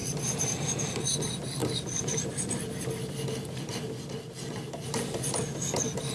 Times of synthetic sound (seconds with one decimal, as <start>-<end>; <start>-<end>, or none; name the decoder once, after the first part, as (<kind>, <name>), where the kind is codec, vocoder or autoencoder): 0.0-0.7 (vocoder, BigVGAN v2)